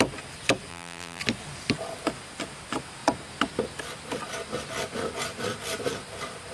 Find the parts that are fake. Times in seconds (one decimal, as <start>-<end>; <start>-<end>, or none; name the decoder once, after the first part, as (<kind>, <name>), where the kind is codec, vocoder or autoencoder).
0.7-1.2 (vocoder, BigVGAN v2)